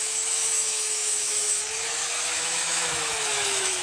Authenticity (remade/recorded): remade